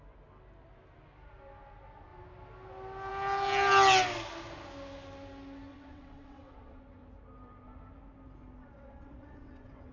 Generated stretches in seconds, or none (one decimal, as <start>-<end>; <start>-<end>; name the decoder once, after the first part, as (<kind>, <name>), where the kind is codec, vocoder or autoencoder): 5.7-6.8 (vocoder, WaveNeXt); 8.6-9.9